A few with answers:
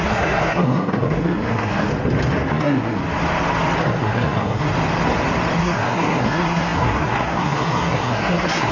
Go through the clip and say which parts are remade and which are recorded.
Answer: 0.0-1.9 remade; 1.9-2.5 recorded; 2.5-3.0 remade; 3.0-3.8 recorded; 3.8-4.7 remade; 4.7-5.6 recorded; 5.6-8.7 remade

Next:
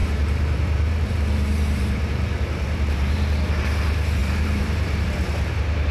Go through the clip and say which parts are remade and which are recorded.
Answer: 0.0-3.5 remade; 3.5-4.2 recorded; 4.2-5.5 remade; 5.5-5.9 recorded

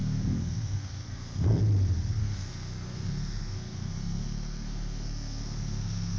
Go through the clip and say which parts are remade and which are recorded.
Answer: 0.0-1.6 remade; 1.6-2.2 recorded; 2.2-6.2 remade

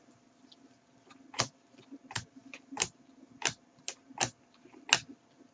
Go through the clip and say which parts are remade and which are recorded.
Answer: 0.0-5.5 recorded

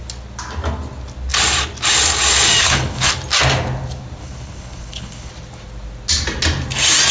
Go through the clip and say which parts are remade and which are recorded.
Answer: 0.0-2.6 recorded; 2.6-3.1 remade; 3.1-4.2 recorded; 4.2-5.3 remade; 5.3-7.1 recorded

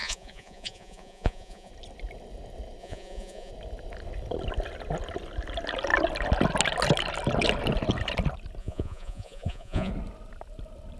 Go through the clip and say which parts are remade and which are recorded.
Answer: 0.0-1.7 remade; 1.7-2.8 recorded; 2.8-3.5 remade; 3.5-8.6 recorded; 8.6-9.9 remade; 9.9-11.0 recorded